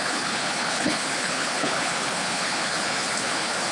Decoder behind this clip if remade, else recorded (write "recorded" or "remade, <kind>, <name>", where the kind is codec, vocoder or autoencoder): remade, codec, HILCodec